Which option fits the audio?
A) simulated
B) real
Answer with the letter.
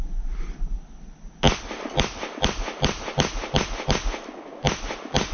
B